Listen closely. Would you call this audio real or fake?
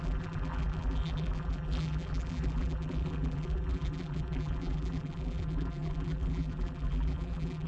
fake